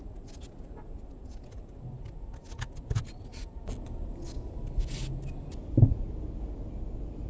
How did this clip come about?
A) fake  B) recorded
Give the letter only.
B